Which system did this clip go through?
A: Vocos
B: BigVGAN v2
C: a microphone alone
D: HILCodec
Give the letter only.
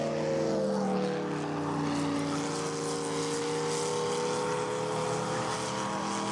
C